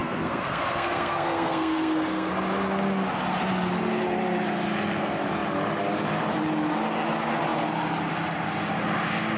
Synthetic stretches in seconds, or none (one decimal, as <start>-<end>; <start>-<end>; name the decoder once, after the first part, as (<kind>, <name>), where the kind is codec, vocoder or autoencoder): 0.0-2.3 (codec, SNAC)